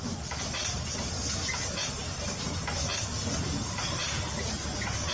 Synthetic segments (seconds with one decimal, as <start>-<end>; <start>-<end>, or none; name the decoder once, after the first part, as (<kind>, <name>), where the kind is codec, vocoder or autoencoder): none